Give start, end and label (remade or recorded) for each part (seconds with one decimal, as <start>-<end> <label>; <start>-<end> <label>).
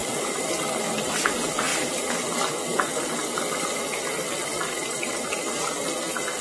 0.0-4.7 recorded; 4.7-5.8 remade; 5.8-6.4 recorded